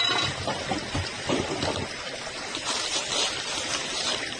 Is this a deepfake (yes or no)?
no